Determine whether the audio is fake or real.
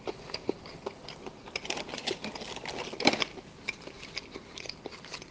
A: fake